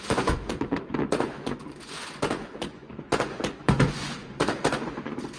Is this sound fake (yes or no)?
yes